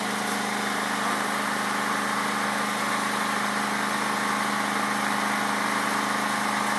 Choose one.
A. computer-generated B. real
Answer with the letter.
B